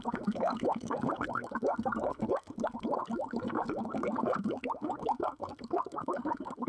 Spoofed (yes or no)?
yes